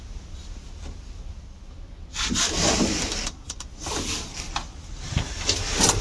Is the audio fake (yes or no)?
no